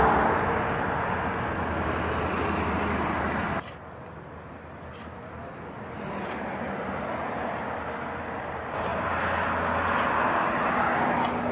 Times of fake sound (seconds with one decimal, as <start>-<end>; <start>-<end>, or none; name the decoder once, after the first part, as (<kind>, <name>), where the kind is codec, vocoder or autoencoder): none